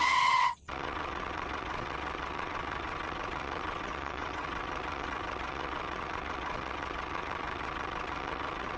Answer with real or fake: fake